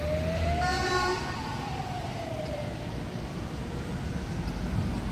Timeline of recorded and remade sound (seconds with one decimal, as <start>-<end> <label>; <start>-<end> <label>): 0.0-1.1 recorded; 1.1-3.6 remade; 3.6-5.1 recorded